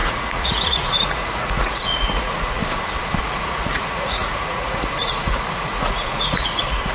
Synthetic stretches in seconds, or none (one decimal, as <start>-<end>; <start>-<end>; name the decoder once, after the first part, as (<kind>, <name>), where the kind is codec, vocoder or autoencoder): 0.0-2.6 (vocoder, Vocos); 3.2-6.9